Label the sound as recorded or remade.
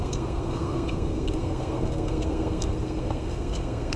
remade